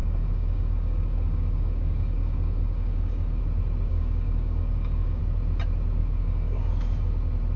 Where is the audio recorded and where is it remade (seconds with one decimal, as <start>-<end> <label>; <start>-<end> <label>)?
0.0-3.4 remade; 3.4-3.9 recorded; 3.9-5.2 remade; 5.2-6.0 recorded; 6.0-6.7 remade; 6.7-7.6 recorded